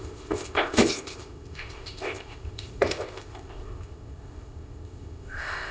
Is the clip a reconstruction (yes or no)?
yes